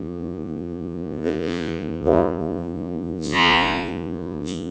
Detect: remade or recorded remade